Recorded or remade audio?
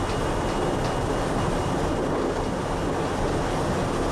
recorded